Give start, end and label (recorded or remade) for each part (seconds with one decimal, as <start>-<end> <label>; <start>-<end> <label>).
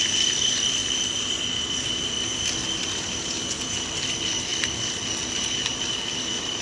0.0-6.6 recorded